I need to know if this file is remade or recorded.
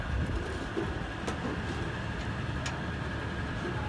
recorded